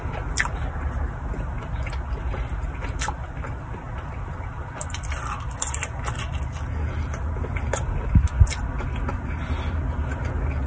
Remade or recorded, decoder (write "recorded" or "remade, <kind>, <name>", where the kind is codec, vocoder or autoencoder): recorded